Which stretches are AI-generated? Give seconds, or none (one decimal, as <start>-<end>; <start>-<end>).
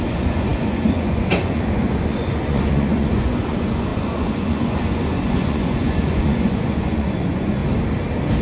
0.0-7.6